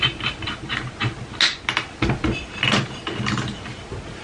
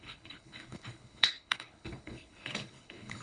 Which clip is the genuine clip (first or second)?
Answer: first